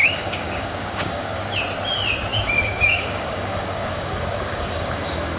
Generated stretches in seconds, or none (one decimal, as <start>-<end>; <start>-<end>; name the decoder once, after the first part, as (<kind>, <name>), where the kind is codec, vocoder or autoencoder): 0.0-1.4 (codec, DAC); 2.3-5.4